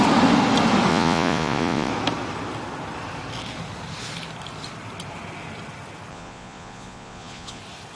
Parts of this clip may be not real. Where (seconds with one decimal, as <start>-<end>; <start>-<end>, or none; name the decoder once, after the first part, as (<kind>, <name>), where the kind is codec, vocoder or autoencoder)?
0.9-1.9 (vocoder, Vocos); 6.1-7.6